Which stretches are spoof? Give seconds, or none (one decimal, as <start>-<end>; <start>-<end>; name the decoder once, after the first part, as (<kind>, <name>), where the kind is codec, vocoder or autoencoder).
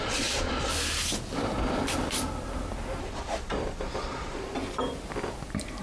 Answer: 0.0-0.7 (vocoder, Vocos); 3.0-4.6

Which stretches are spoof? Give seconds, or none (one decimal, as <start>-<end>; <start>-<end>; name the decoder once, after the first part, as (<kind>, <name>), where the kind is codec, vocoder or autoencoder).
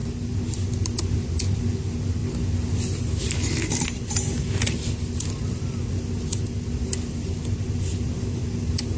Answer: 2.2-4.6 (vocoder, BigVGAN v2)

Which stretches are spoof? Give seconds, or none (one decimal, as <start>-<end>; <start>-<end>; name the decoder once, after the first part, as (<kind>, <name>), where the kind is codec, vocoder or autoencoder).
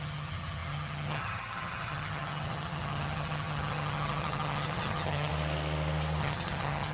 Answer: 0.0-5.3 (vocoder, HiFi-GAN); 6.2-6.9